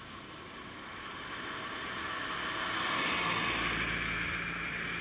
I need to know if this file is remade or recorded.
recorded